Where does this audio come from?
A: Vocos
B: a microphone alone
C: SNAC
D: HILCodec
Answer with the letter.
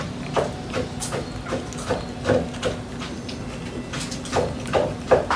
B